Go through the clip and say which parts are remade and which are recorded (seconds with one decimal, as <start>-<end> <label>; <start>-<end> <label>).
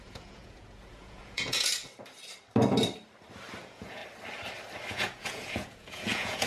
0.0-1.7 remade; 1.7-3.6 recorded; 3.6-4.0 remade; 4.0-4.9 recorded; 4.9-6.5 remade